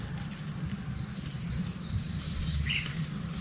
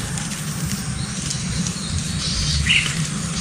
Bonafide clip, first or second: first